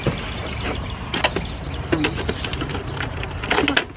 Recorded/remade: recorded